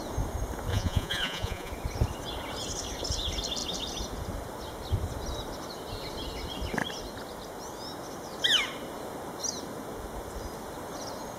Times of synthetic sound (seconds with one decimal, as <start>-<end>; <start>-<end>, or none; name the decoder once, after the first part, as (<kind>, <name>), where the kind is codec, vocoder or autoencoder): 0.7-1.7 (vocoder, Vocos)